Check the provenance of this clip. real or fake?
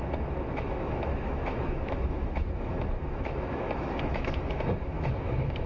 fake